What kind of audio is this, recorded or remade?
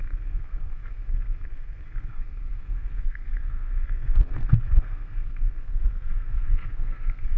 remade